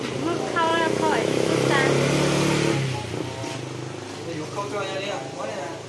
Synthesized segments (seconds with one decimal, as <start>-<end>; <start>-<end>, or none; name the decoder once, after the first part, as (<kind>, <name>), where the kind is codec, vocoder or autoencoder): 0.7-1.5 (autoencoder, DAC-VAE)